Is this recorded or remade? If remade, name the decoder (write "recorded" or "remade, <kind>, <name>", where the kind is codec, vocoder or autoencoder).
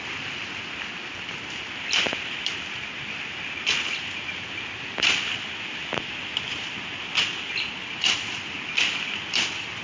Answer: recorded